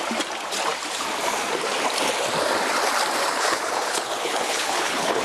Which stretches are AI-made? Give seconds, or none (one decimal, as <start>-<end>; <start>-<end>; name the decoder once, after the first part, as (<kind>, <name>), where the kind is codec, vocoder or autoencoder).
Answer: 3.2-5.2 (codec, HILCodec)